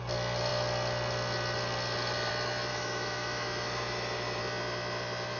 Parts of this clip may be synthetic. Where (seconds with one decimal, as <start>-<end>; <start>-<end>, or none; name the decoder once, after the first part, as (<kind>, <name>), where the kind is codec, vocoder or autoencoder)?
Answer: 2.7-4.4 (autoencoder, DAC-VAE)